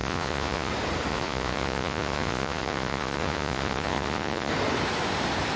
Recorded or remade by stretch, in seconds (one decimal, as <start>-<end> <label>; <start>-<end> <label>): 0.0-0.7 remade; 0.7-1.1 recorded; 1.1-4.5 remade; 4.5-5.6 recorded